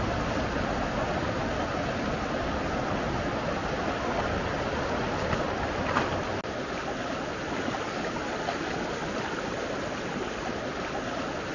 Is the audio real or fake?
real